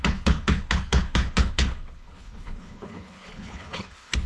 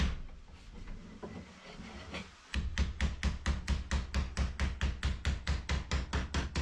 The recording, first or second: second